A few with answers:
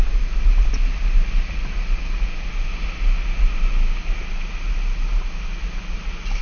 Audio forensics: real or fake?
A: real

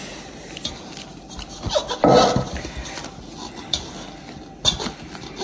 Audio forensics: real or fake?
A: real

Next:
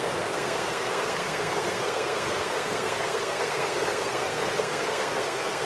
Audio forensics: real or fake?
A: fake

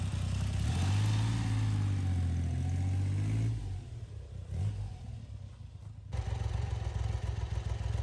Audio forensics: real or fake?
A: real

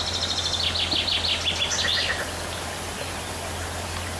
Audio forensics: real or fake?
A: real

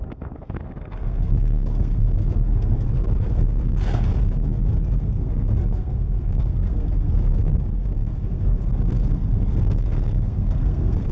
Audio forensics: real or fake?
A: fake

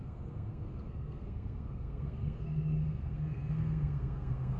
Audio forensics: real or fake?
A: fake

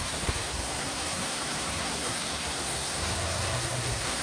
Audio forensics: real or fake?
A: fake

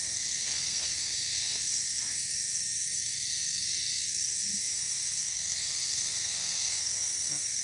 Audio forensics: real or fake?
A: fake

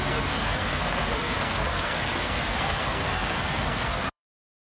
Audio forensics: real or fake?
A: fake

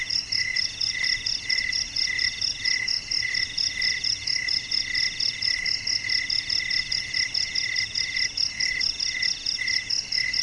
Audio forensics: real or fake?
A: real